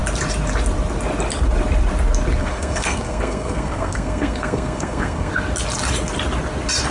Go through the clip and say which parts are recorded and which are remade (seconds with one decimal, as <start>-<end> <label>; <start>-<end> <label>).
0.0-2.4 recorded; 2.4-5.3 remade; 5.3-6.9 recorded